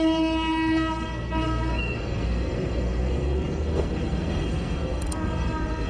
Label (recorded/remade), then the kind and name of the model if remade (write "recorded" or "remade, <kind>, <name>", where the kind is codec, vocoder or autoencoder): remade, codec, SNAC